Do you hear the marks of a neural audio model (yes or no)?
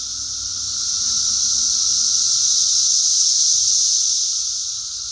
no